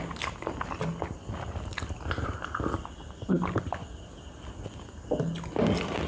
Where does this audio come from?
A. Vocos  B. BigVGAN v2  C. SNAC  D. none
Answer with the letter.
D